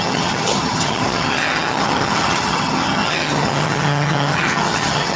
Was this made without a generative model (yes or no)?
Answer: no